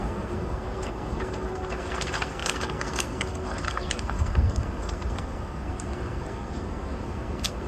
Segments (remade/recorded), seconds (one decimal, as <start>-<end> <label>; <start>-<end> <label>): 0.0-7.7 remade